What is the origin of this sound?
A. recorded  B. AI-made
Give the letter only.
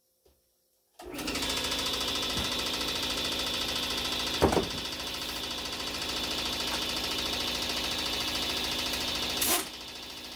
A